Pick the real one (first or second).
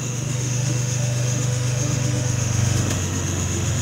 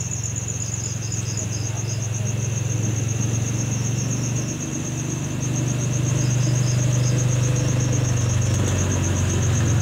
second